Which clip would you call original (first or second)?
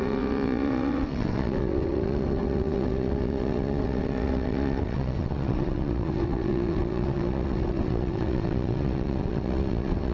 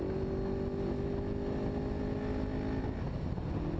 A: second